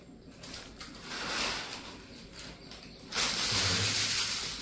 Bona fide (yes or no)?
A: yes